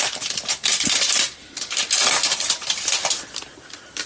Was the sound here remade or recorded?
recorded